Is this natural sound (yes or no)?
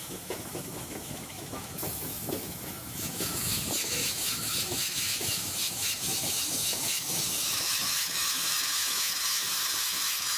no